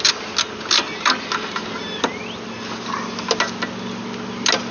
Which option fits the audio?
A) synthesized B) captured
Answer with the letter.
B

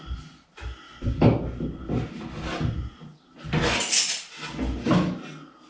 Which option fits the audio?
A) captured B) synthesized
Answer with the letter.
A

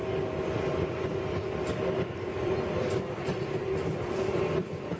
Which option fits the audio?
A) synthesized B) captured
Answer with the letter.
B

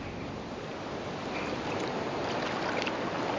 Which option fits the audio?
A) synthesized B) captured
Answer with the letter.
B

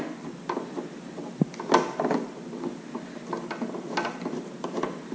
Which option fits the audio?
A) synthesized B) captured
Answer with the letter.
B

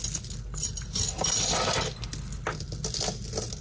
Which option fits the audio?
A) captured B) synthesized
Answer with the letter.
A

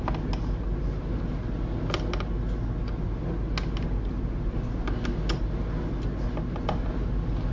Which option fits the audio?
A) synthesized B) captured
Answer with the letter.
B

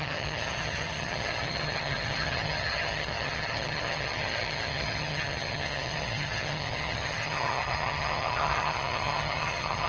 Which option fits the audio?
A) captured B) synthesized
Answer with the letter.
B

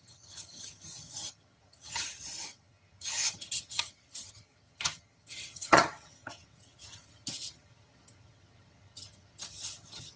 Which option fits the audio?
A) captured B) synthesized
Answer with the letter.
B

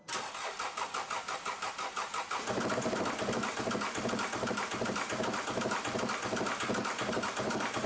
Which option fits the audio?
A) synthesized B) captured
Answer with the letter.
B